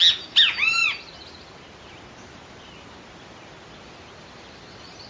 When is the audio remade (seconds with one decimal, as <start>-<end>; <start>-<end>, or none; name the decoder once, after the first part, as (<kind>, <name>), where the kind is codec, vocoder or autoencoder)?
none